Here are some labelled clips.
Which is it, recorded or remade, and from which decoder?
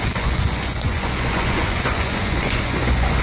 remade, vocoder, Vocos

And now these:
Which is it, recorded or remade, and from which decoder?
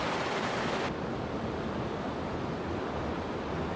recorded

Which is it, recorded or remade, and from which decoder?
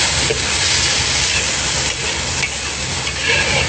recorded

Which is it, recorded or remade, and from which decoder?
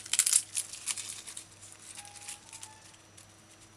recorded